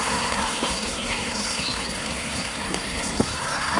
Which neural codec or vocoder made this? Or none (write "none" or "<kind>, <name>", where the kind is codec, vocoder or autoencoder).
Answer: codec, SNAC